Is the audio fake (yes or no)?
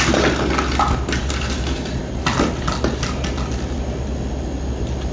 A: no